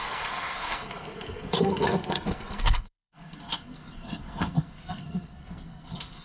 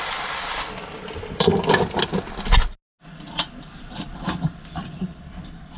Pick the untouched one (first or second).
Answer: second